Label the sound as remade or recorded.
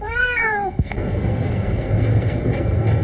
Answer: remade